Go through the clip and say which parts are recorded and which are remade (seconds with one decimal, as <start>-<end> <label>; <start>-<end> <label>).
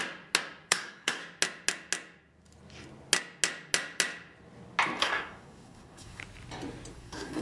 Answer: 0.0-0.7 recorded; 0.7-1.2 remade; 1.2-5.0 recorded; 5.0-6.2 remade; 6.2-6.9 recorded; 6.9-7.4 remade